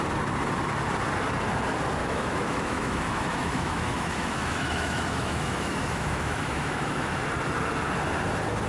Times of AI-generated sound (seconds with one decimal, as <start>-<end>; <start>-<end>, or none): 2.0-7.2